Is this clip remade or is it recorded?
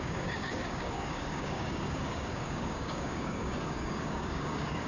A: remade